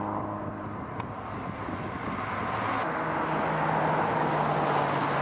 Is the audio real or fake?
real